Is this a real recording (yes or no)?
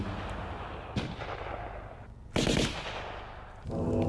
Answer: yes